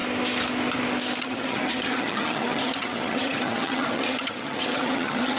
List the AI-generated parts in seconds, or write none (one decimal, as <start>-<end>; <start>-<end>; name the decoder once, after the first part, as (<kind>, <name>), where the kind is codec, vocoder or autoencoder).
1.2-5.4 (vocoder, HiFi-GAN)